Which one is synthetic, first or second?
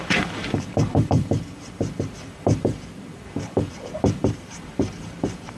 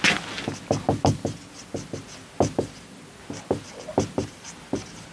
first